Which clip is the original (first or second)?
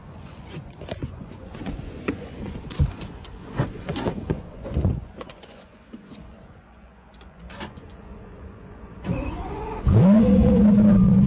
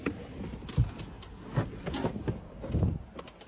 second